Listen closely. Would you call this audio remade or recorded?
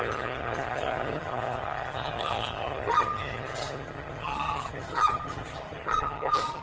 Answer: remade